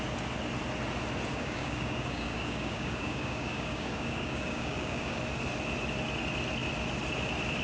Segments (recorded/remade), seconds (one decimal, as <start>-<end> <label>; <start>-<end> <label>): 0.0-1.3 recorded; 1.3-5.2 remade; 5.2-7.6 recorded